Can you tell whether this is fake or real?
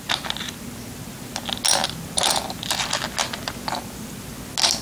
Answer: real